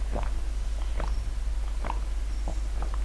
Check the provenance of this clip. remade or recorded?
recorded